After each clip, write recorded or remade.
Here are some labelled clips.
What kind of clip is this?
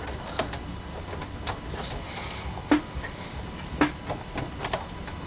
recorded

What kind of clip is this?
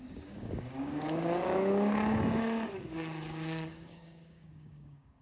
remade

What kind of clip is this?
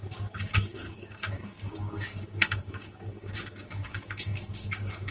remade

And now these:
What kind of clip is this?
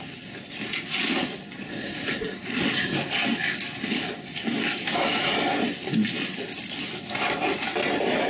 recorded